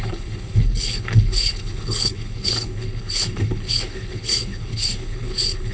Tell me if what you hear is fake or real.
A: fake